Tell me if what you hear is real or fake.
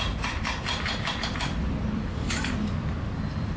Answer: fake